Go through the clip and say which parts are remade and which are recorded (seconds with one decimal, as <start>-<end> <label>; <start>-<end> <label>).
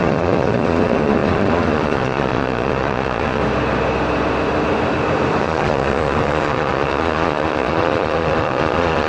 0.0-3.4 remade; 3.4-5.4 recorded; 5.4-9.1 remade